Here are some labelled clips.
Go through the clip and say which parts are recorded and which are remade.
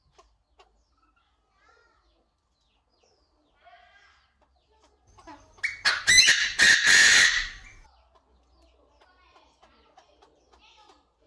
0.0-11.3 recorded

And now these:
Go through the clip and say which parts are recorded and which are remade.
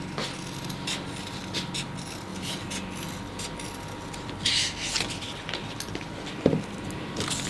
0.0-7.5 recorded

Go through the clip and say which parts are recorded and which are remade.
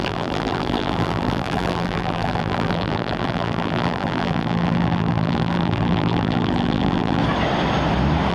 0.0-7.2 remade; 7.2-8.3 recorded